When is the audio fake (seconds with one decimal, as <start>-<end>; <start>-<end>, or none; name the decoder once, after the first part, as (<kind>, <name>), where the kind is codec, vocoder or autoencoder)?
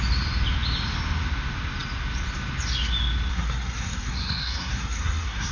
3.3-5.5 (codec, SNAC)